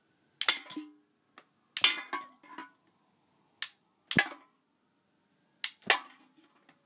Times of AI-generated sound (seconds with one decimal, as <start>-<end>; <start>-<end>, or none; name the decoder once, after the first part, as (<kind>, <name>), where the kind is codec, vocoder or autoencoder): none